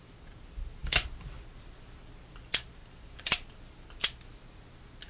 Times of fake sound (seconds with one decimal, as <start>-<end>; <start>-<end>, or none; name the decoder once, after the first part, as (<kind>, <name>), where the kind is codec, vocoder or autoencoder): 0.8-2.4 (vocoder, BigVGAN v2); 2.8-3.5